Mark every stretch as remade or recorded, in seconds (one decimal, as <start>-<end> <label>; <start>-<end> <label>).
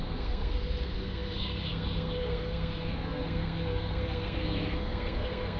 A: 0.0-5.6 remade